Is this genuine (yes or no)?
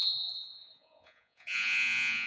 no